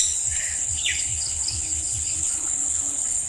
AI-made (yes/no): yes